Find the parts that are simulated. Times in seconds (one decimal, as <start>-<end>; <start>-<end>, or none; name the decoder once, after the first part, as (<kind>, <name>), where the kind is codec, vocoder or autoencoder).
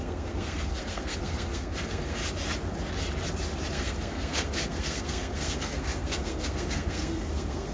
0.0-2.2 (codec, SNAC); 3.7-7.7